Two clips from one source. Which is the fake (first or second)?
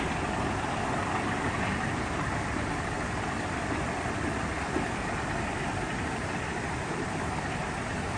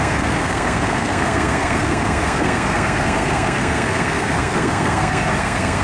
second